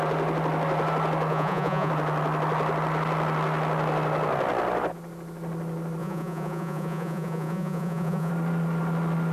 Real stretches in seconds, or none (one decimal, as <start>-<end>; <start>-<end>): 0.0-1.3; 1.9-6.0; 8.3-9.3